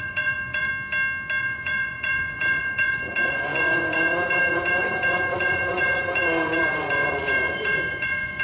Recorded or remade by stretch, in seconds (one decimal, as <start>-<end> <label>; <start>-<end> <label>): 0.0-0.7 remade; 0.7-1.4 recorded; 1.4-8.4 remade